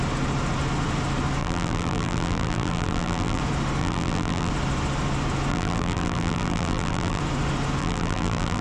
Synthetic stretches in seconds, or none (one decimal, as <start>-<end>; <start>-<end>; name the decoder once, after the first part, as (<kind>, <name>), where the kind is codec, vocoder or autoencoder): 1.4-3.4 (vocoder, BigVGAN v2); 3.8-4.5; 5.5-7.2; 7.8-8.6